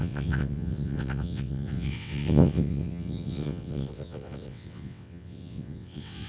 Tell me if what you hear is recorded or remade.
remade